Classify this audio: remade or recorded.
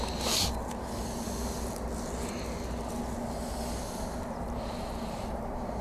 recorded